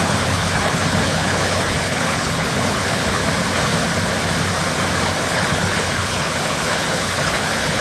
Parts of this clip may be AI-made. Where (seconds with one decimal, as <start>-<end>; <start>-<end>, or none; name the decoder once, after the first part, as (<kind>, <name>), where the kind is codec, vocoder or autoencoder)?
0.0-3.2 (codec, HILCodec); 5.2-7.8